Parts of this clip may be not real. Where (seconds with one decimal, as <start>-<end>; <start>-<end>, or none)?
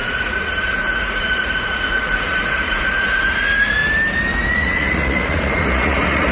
0.0-3.8; 4.5-6.3